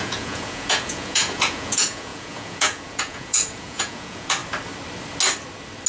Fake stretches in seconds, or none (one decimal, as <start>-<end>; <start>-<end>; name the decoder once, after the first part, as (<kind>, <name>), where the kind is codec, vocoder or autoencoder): 0.0-4.4 (vocoder, Vocos)